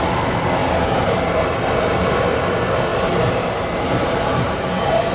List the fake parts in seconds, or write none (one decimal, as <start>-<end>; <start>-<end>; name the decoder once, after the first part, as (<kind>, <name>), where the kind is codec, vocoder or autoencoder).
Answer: 0.6-1.7 (vocoder, BigVGAN v2); 2.9-5.1